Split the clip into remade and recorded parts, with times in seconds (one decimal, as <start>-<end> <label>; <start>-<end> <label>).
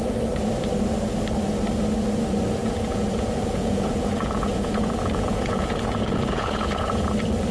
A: 0.0-2.6 recorded; 2.6-7.1 remade; 7.1-7.5 recorded